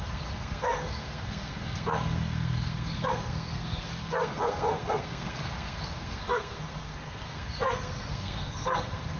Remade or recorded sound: remade